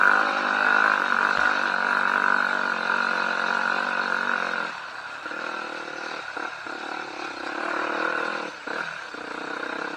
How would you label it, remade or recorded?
recorded